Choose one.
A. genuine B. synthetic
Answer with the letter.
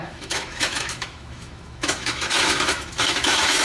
B